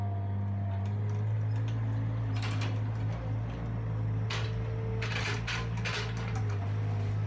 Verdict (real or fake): real